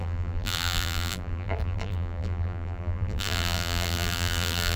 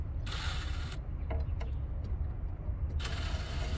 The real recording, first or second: second